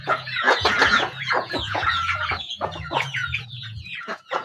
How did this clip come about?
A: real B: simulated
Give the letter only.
B